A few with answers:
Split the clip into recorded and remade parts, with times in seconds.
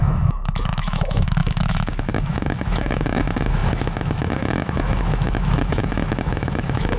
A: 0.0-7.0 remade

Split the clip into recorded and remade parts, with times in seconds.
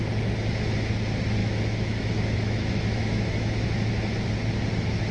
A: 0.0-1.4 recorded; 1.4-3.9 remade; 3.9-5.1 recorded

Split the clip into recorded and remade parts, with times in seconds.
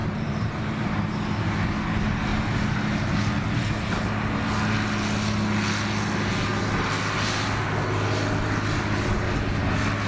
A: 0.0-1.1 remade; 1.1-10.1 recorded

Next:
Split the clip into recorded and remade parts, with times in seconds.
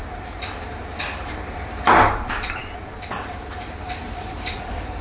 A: 0.0-5.0 remade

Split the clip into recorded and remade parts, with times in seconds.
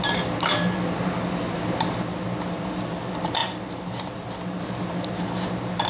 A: 0.0-5.9 recorded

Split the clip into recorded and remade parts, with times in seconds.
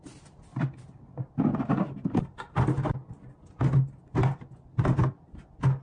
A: 0.0-5.8 recorded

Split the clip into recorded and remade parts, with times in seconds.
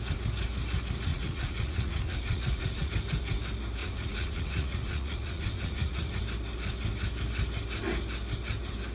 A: 0.0-1.1 recorded; 1.1-2.9 remade; 2.9-3.8 recorded; 3.8-6.2 remade; 6.2-8.9 recorded